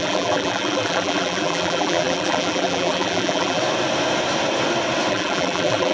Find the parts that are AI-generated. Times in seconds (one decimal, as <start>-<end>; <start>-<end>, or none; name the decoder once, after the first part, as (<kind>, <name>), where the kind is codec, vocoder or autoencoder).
0.0-3.6 (vocoder, BigVGAN v2); 5.1-5.9